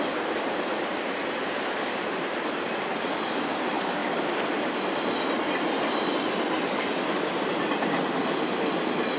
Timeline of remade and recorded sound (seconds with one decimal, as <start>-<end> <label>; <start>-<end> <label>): 0.0-4.0 remade; 4.0-6.1 recorded; 6.1-6.9 remade; 6.9-8.2 recorded; 8.2-9.2 remade